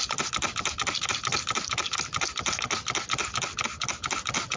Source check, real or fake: real